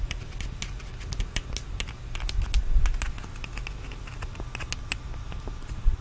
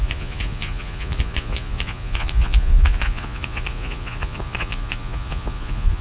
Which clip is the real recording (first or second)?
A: first